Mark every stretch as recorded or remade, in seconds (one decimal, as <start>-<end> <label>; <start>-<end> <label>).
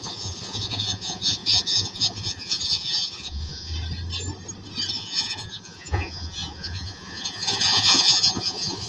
0.0-3.7 remade; 3.7-4.9 recorded; 4.9-8.9 remade